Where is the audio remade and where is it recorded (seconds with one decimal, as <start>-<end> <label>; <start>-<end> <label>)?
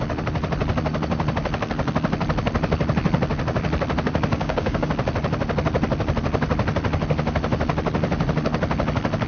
0.0-4.3 recorded; 4.3-4.9 remade; 4.9-9.3 recorded